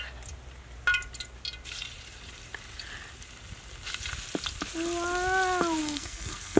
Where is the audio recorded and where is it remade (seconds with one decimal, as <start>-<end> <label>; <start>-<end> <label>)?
0.0-5.8 recorded; 5.8-6.6 remade

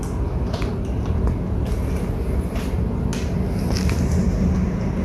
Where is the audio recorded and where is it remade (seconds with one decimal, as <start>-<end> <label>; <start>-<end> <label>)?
0.0-5.0 recorded

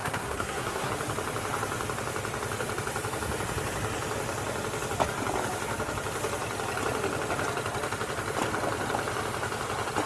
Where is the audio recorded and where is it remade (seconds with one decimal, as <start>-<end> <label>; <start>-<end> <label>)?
0.0-0.9 remade; 0.9-10.1 recorded